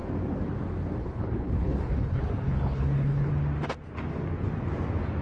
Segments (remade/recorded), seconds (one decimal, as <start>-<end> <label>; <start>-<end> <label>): 0.0-1.0 recorded; 1.0-3.3 remade; 3.3-5.2 recorded